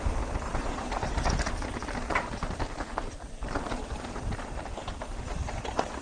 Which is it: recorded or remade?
recorded